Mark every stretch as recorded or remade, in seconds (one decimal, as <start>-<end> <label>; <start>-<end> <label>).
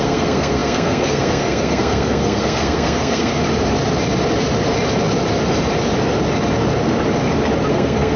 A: 0.0-3.4 remade; 3.4-7.7 recorded; 7.7-8.2 remade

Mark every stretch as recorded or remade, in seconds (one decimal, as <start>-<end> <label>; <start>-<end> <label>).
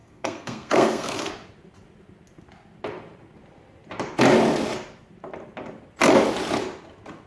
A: 0.0-1.3 remade; 1.3-7.3 recorded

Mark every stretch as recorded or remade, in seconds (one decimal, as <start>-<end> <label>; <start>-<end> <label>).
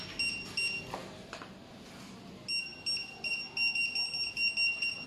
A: 0.0-5.1 recorded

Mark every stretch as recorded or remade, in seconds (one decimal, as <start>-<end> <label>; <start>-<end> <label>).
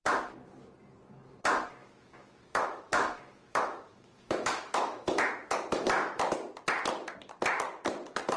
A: 0.0-1.8 recorded; 1.8-5.3 remade; 5.3-8.4 recorded